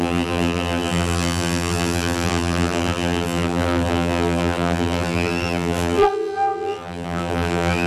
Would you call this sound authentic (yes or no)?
no